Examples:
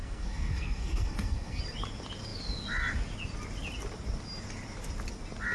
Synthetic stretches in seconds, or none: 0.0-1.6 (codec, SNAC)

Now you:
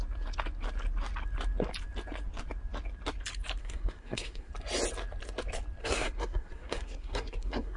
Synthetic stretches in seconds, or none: 3.6-4.5 (codec, SNAC); 5.8-7.8

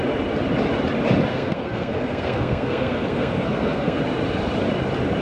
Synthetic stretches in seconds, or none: 1.3-4.0 (codec, SNAC)

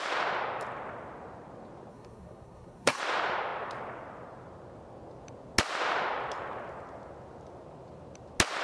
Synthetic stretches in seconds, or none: 1.9-3.0 (codec, SNAC)

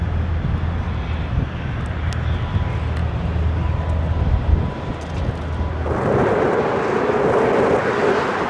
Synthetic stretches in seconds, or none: none